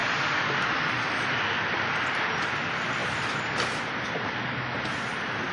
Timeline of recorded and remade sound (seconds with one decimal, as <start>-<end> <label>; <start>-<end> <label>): 0.0-5.5 recorded